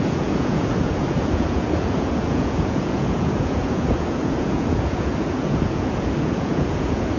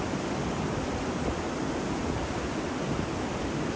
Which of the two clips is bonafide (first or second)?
second